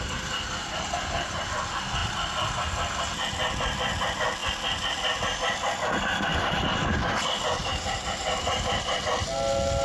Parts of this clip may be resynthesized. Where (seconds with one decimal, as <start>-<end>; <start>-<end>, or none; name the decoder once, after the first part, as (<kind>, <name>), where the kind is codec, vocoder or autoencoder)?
0.6-1.6 (vocoder, BigVGAN v2); 7.6-9.0